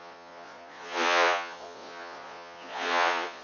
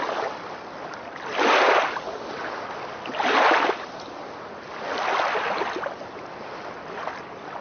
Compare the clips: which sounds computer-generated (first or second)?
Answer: first